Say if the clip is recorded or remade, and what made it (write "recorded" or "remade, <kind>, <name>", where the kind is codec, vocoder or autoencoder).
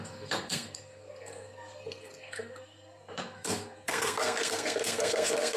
remade, codec, SNAC